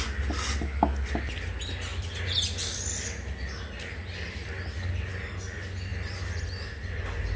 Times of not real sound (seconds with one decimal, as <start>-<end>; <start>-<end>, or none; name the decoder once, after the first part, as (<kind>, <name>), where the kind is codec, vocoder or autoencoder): none